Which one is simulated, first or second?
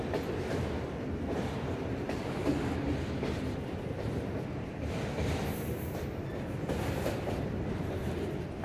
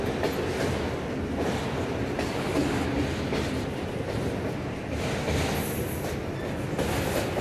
first